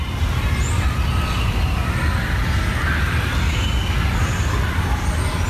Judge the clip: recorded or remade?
recorded